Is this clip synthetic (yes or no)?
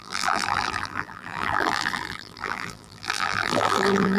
yes